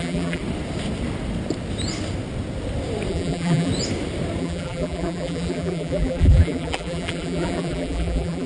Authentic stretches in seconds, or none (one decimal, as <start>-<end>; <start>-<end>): 0.4-3.1; 3.7-4.4